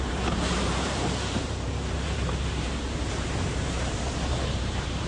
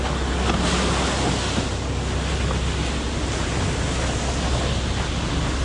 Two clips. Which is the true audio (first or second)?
second